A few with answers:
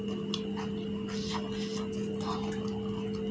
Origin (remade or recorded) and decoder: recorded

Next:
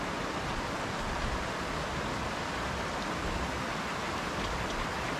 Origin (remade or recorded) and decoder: recorded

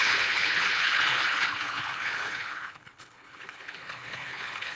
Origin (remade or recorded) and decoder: remade, codec, HILCodec